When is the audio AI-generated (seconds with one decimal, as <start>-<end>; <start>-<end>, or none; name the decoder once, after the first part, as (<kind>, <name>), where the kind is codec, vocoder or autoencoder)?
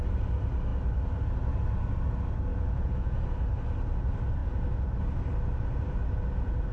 2.5-3.2 (vocoder, Vocos)